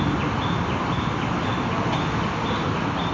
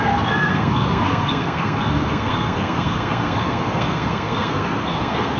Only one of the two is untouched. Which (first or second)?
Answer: first